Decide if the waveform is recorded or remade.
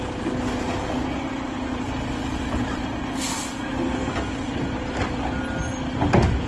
recorded